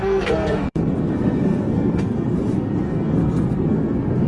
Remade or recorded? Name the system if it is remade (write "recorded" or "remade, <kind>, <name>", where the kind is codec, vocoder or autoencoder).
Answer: remade, codec, SNAC